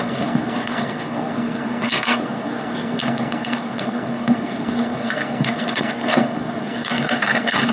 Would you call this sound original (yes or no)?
no